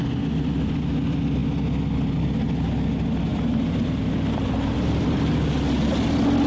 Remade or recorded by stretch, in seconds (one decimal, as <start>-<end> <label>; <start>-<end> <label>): 0.0-3.3 recorded; 3.3-5.3 remade; 5.3-6.5 recorded